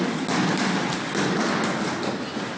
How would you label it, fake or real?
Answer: real